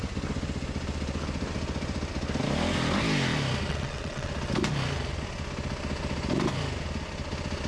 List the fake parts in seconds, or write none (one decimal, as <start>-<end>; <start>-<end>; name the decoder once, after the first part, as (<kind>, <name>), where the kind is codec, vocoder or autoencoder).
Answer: 3.7-4.3 (vocoder, WaveNeXt)